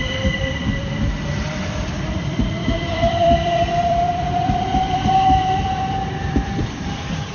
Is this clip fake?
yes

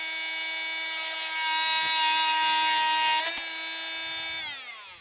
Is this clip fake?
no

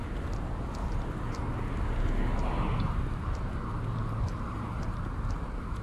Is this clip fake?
no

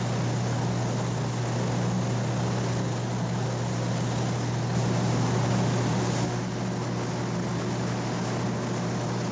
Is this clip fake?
no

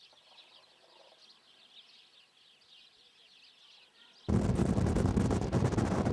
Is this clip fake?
no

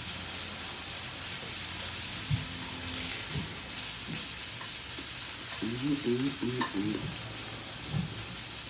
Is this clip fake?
no